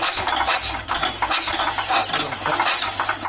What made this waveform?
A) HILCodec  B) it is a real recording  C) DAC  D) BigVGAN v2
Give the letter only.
B